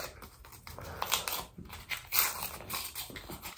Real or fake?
real